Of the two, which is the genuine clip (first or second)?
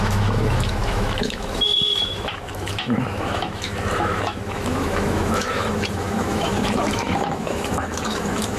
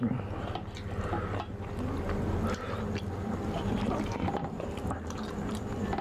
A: second